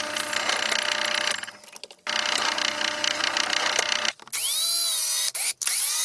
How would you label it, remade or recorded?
recorded